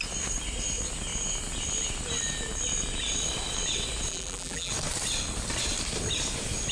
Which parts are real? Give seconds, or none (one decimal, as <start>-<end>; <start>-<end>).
0.0-4.1; 4.7-6.7

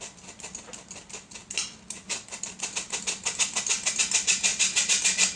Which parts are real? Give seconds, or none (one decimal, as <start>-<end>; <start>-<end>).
0.0-5.4

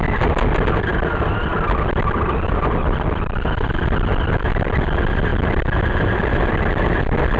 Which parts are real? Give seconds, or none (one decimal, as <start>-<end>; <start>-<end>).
0.0-7.4